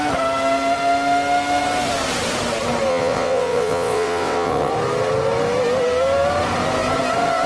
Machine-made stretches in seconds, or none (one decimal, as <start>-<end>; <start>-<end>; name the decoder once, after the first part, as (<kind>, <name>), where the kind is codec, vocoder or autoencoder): 2.9-4.7 (vocoder, WaveNeXt)